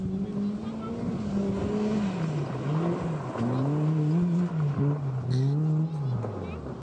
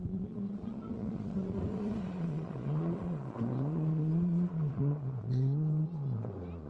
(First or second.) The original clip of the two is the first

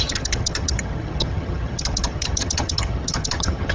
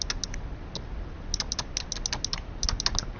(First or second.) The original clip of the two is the second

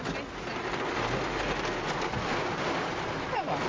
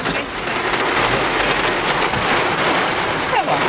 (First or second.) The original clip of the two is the first